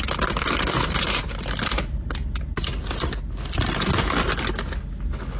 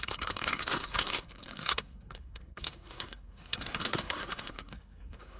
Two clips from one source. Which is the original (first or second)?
first